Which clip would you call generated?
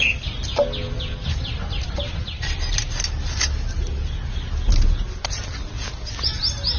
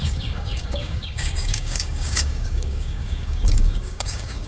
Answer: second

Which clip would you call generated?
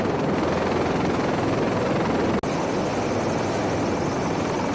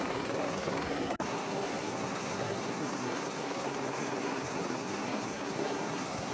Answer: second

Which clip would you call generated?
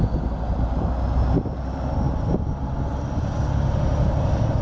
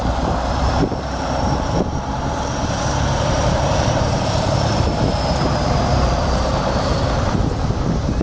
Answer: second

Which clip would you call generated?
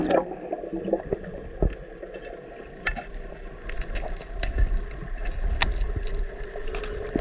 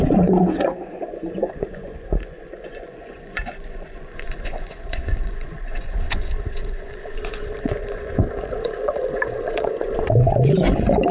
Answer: second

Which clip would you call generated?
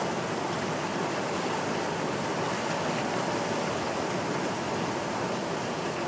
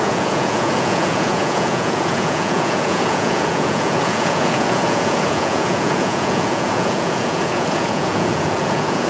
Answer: second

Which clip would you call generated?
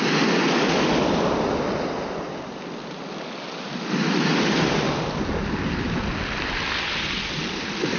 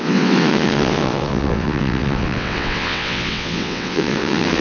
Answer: second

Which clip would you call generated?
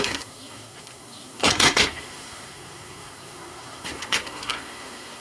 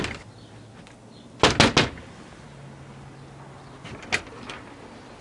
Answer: first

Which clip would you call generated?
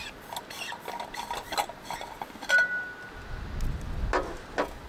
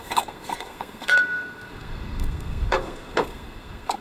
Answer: second